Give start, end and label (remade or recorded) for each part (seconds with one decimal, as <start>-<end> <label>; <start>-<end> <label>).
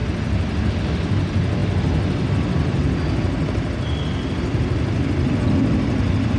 0.0-6.4 recorded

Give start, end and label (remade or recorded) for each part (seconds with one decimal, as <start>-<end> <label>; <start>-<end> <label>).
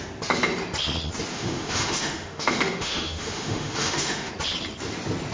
0.0-1.3 recorded; 1.3-4.3 remade; 4.3-5.3 recorded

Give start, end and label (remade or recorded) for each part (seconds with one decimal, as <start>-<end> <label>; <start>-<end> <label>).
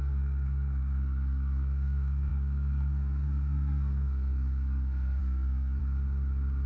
0.0-5.8 remade; 5.8-6.7 recorded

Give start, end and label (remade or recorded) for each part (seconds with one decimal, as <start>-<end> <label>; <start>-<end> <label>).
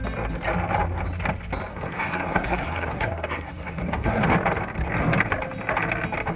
0.0-1.7 recorded; 1.7-4.2 remade; 4.2-6.4 recorded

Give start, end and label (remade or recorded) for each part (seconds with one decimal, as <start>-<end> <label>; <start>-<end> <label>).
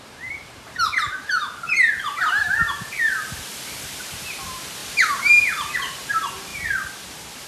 0.0-3.5 remade; 3.5-4.0 recorded; 4.0-6.5 remade; 6.5-7.5 recorded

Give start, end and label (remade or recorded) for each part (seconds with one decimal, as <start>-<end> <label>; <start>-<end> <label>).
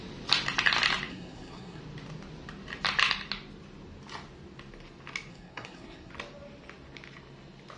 0.0-1.1 recorded; 1.1-1.8 remade; 1.8-5.3 recorded; 5.3-6.1 remade; 6.1-7.8 recorded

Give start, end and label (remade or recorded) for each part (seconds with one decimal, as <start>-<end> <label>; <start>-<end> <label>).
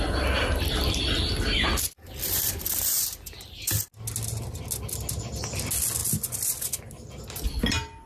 0.0-8.1 recorded